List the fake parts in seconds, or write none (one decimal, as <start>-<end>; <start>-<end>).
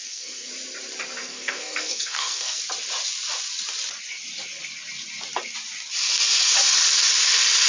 0.0-0.5; 1.2-2.6